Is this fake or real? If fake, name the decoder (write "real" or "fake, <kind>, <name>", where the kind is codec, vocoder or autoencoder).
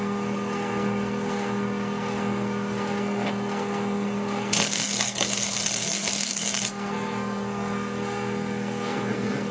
fake, codec, SNAC